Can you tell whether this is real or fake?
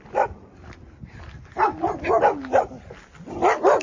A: real